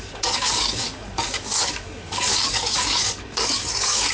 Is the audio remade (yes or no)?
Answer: yes